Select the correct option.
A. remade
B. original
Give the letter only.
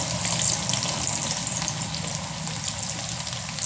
B